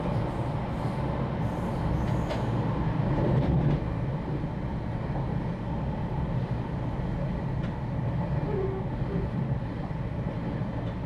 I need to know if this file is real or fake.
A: real